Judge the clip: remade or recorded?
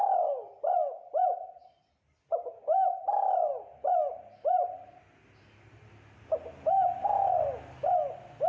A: recorded